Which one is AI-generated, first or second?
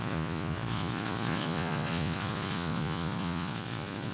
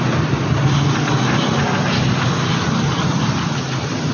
first